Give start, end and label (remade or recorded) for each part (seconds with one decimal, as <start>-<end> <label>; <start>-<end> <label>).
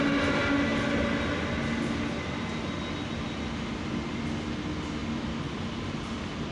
0.0-6.5 recorded